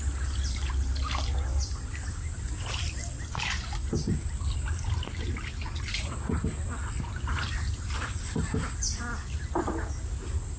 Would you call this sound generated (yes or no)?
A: no